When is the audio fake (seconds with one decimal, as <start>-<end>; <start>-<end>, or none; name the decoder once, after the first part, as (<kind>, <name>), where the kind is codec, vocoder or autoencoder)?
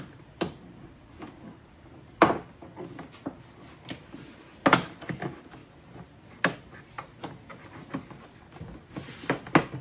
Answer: none